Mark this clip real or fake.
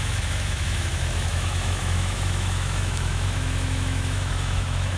fake